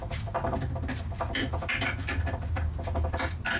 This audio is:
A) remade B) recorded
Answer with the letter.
B